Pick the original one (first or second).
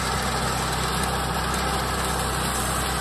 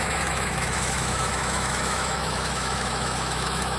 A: first